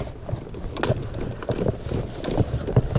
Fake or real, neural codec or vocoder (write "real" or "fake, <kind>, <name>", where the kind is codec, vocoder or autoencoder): real